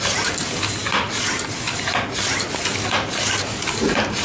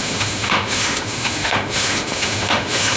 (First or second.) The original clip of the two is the first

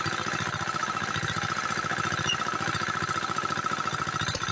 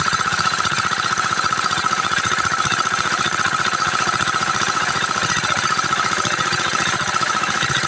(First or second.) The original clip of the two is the first